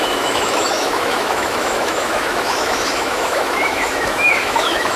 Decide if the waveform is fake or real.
fake